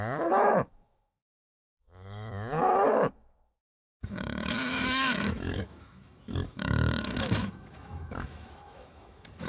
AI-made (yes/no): yes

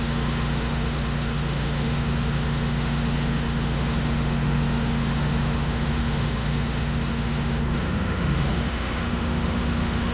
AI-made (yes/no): yes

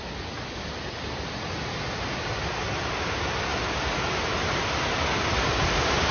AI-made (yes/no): no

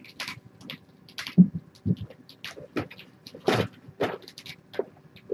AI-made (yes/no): no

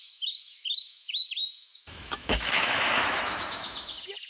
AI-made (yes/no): yes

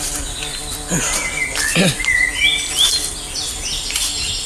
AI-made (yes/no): no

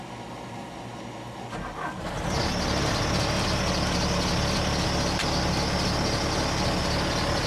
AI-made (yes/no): no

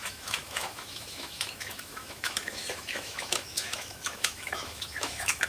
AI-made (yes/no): yes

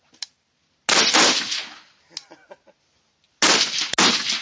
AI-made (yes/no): no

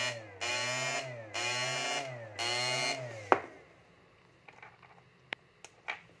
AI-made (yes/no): no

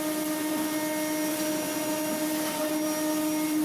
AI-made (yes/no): no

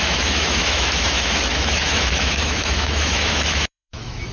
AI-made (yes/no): yes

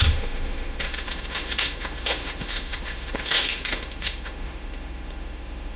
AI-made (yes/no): yes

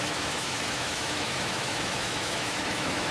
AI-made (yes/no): yes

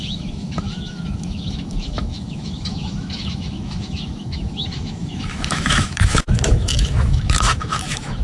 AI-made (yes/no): yes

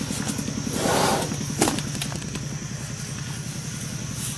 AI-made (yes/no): no